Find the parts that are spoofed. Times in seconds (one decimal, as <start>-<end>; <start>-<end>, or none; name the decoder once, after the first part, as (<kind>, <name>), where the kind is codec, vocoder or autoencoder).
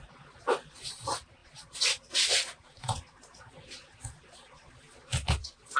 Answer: 0.0-5.8 (vocoder, Vocos)